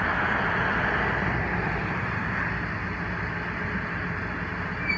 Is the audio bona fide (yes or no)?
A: yes